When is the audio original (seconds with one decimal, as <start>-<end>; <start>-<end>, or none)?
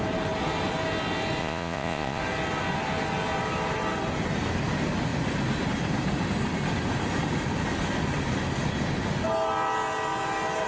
0.0-1.4; 2.2-10.7